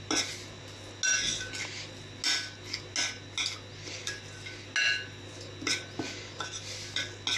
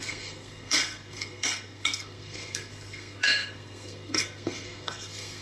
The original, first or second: first